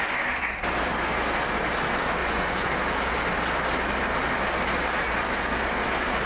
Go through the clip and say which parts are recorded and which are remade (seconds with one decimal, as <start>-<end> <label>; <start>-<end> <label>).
0.0-2.2 recorded; 2.2-2.7 remade; 2.7-6.3 recorded